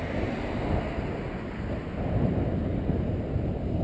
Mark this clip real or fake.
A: real